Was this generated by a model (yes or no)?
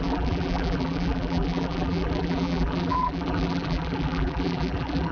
yes